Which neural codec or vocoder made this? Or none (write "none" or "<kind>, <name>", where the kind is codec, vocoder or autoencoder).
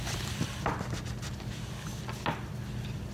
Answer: none